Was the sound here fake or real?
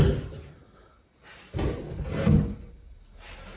real